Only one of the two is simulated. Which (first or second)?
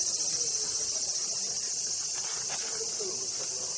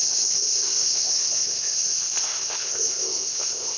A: second